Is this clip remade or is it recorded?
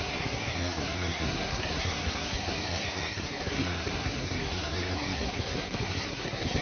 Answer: remade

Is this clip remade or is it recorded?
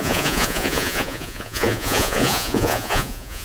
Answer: remade